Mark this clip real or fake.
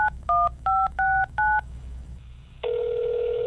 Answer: fake